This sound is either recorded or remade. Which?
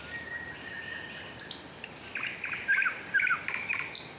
recorded